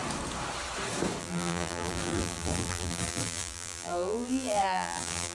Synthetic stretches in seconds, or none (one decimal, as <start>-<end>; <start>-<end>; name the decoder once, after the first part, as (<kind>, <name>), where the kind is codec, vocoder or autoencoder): 1.2-5.3 (vocoder, BigVGAN v2)